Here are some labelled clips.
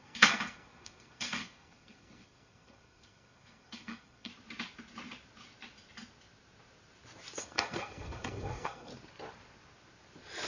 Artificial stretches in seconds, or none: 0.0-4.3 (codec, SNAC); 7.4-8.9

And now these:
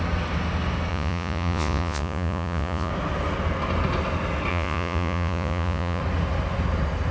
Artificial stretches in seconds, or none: 0.9-2.9 (vocoder, Vocos); 4.5-6.0

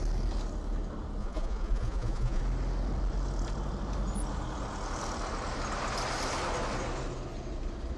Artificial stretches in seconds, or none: 1.2-2.4 (vocoder, Vocos)